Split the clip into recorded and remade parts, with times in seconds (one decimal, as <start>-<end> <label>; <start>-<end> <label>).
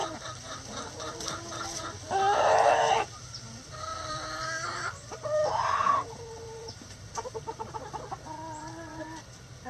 0.0-6.6 remade; 6.6-9.2 recorded; 9.2-9.7 remade